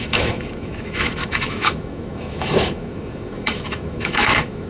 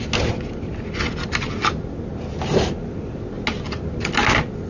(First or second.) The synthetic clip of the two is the first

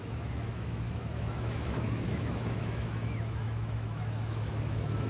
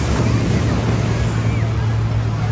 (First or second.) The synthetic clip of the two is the first